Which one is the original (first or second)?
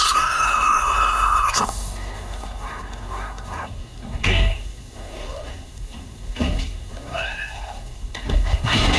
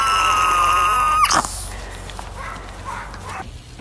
second